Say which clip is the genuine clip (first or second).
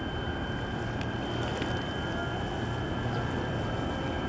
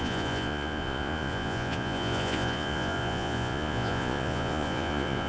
first